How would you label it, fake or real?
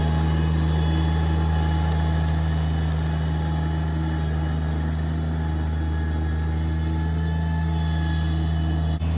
real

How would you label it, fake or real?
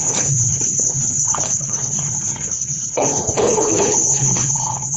fake